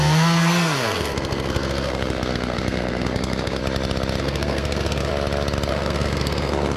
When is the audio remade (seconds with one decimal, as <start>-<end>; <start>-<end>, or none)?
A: 0.0-3.6; 4.2-5.1; 5.7-6.8